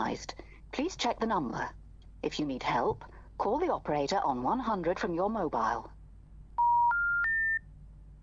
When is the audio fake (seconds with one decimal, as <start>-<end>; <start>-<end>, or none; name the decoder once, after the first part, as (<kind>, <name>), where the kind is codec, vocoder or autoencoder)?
none